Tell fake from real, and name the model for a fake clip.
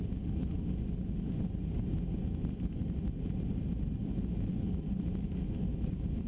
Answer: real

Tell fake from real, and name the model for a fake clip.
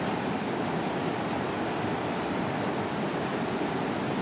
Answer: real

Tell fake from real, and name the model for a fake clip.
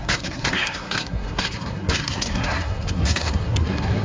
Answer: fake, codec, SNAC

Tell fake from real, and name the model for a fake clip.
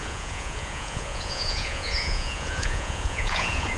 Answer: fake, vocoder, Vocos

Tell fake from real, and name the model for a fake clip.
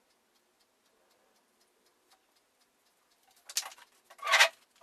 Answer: real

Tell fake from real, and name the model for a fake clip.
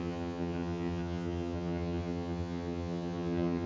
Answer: fake, vocoder, HiFi-GAN